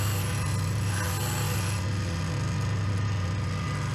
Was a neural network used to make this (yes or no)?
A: no